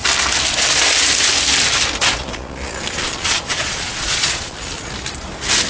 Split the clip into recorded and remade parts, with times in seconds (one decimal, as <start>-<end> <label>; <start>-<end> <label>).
0.0-2.2 recorded; 2.2-4.8 remade; 4.8-5.7 recorded